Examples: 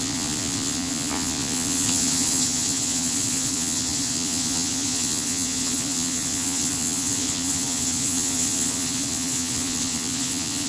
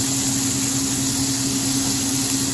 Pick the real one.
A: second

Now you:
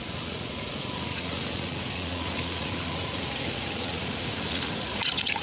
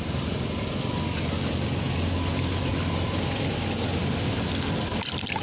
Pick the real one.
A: second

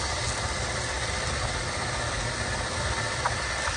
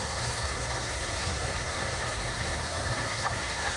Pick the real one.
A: first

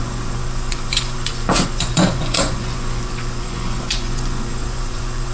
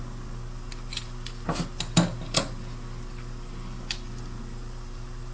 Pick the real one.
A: second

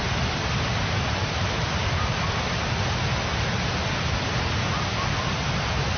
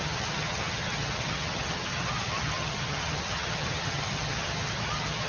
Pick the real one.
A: first